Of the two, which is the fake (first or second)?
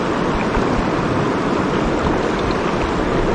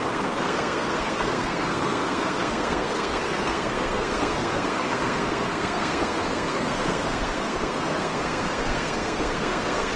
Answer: second